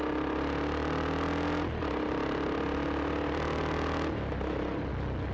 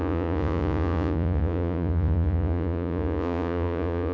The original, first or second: first